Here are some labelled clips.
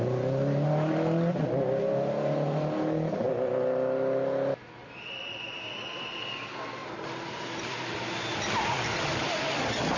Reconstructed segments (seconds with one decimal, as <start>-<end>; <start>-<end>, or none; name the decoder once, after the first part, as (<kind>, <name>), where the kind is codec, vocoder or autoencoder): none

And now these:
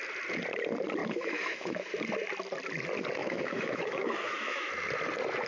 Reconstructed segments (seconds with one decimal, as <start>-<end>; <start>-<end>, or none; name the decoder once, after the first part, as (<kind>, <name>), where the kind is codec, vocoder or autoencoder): 1.0-1.9 (autoencoder, DAC-VAE); 3.2-4.7

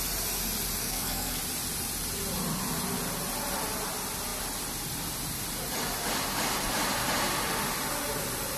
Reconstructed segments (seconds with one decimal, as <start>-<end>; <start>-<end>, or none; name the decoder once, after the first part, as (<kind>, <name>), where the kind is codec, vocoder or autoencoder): 0.8-1.4 (codec, SNAC)